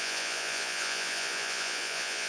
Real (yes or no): no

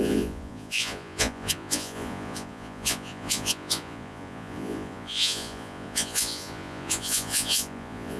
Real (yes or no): no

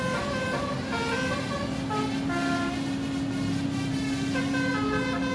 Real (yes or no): yes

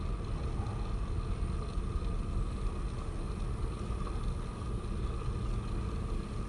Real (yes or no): yes